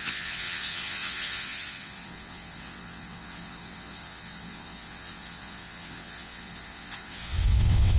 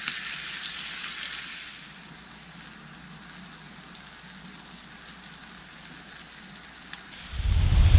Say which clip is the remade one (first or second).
first